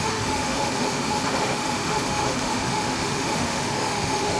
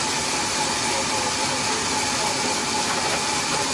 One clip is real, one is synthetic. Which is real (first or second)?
second